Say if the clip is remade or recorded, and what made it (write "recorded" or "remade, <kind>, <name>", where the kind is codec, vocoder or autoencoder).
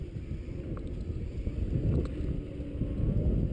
recorded